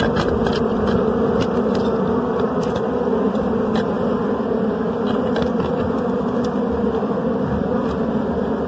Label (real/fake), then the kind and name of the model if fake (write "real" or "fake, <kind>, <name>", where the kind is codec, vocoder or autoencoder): real